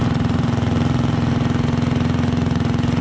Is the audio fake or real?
real